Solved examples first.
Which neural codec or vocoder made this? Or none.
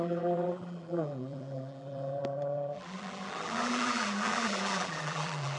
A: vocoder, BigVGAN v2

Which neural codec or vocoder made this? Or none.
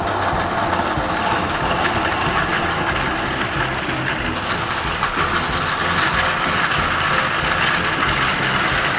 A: none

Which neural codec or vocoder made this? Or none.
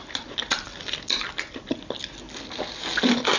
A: none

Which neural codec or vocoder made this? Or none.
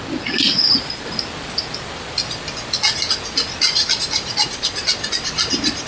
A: none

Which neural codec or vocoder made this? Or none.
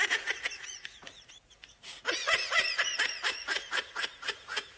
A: vocoder, Vocos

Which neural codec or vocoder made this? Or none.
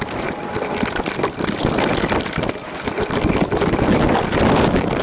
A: none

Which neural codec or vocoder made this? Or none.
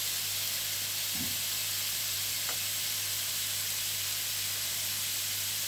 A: none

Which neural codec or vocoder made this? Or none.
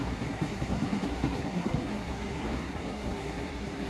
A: codec, SNAC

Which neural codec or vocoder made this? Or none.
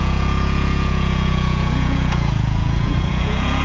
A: vocoder, Vocos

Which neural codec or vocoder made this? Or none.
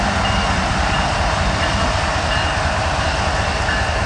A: none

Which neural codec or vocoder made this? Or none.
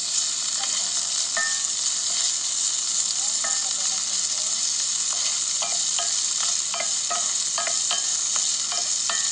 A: none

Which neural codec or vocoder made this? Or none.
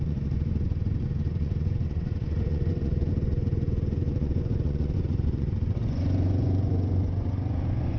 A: vocoder, Vocos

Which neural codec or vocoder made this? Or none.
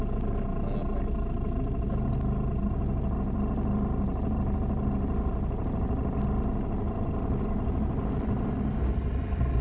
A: none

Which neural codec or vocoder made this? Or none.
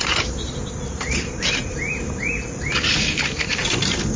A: none